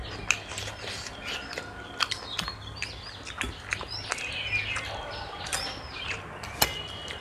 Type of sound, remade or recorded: recorded